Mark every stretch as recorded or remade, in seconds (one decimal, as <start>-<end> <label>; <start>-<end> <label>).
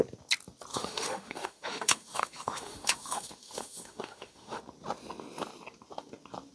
0.0-0.7 recorded; 0.7-4.6 remade; 4.6-6.5 recorded